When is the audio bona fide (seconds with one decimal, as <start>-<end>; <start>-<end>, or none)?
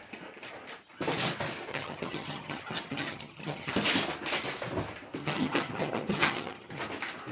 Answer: 0.0-1.7; 3.7-5.2; 6.8-7.3